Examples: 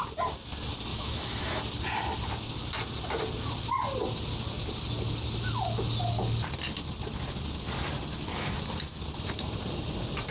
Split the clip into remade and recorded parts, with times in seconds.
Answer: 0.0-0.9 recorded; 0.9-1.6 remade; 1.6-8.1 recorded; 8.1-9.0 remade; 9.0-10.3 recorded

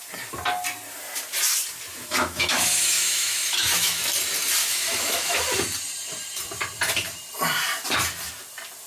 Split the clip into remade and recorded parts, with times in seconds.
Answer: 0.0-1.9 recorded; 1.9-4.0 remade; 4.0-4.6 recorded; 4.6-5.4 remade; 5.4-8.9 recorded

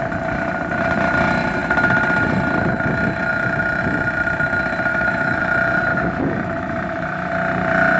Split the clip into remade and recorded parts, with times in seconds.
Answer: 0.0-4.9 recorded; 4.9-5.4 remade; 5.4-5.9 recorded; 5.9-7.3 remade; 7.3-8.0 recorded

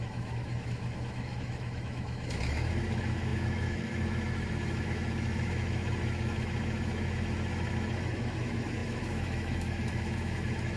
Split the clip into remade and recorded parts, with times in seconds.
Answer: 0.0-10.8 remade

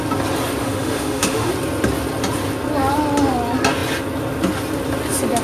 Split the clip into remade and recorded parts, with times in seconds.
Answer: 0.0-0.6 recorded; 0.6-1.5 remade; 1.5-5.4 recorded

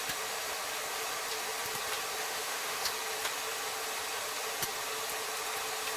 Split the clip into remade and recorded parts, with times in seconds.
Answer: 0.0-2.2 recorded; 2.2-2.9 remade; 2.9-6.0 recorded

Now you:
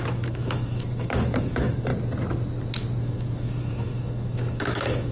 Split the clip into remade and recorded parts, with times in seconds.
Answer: 0.0-1.9 remade; 1.9-3.0 recorded; 3.0-5.1 remade

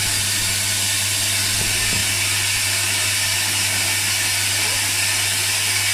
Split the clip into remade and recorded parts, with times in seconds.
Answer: 0.0-5.9 recorded